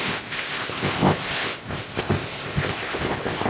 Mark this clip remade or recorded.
remade